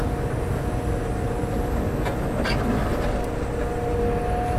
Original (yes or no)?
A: yes